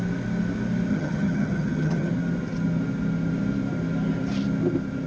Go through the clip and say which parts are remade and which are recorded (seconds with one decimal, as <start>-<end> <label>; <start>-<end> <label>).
0.0-0.9 recorded; 0.9-2.1 remade; 2.1-5.1 recorded